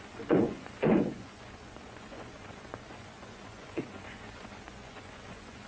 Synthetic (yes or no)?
yes